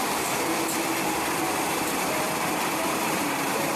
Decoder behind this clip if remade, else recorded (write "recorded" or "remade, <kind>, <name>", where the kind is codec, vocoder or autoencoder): remade, vocoder, BigVGAN v2